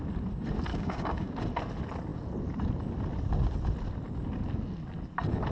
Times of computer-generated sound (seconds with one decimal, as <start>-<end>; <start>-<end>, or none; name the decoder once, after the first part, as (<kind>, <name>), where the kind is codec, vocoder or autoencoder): 0.7-1.3 (codec, DAC)